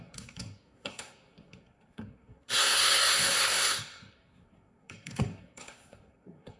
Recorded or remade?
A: remade